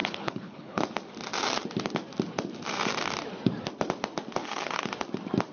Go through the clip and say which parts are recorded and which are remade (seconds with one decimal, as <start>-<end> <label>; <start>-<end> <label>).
0.0-0.8 remade; 0.8-4.4 recorded; 4.4-4.9 remade; 4.9-5.5 recorded